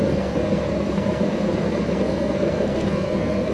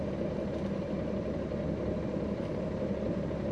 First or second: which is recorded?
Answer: second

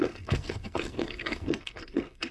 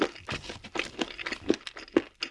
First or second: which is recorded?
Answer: second